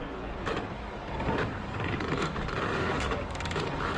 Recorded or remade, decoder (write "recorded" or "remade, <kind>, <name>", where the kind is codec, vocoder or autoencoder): remade, codec, DAC